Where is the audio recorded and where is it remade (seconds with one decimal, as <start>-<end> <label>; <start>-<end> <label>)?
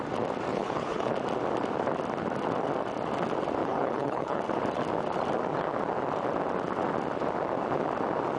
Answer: 0.0-0.5 recorded; 0.5-1.1 remade; 1.1-3.6 recorded; 3.6-4.4 remade; 4.4-8.4 recorded